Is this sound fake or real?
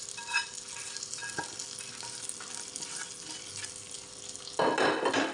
real